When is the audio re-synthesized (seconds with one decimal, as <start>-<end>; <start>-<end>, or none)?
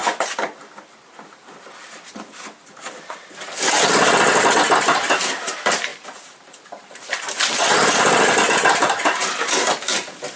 none